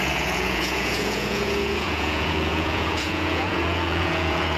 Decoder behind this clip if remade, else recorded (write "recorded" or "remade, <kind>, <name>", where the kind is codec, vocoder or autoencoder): remade, vocoder, Vocos